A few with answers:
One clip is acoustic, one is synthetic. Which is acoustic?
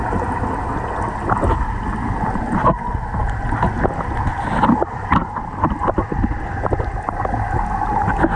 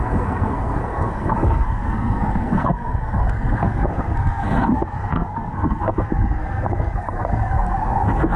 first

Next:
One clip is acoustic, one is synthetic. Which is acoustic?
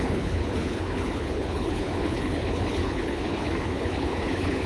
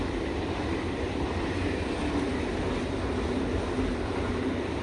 second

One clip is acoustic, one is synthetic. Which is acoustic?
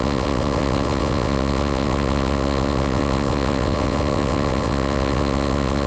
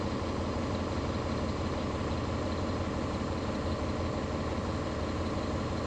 second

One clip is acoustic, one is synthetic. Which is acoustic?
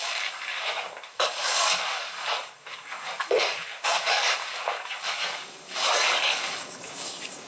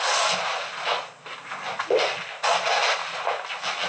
second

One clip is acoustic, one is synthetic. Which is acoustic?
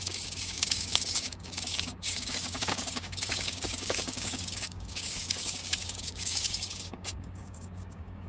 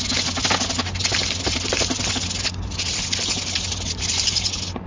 second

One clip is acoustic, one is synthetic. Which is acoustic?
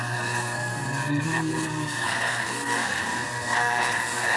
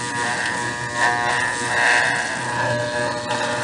second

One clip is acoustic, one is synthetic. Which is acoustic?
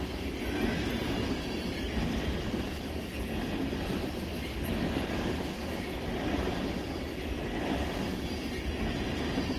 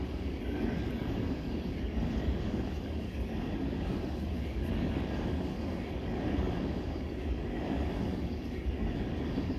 first